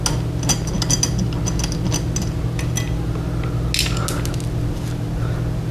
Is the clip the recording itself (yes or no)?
yes